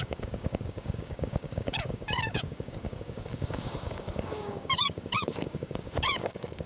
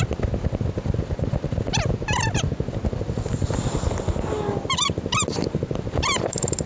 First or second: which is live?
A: second